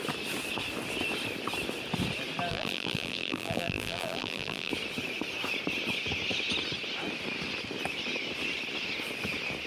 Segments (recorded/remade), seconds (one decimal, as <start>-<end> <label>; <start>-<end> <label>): 0.0-2.5 recorded; 2.5-4.7 remade; 4.7-9.7 recorded